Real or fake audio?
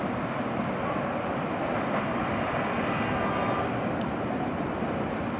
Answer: real